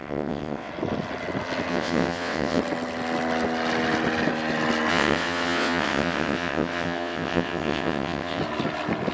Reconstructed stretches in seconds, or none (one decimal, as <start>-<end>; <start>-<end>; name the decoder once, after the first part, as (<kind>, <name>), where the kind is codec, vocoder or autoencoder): 0.0-0.7 (vocoder, WaveNeXt); 1.7-2.6; 4.9-8.4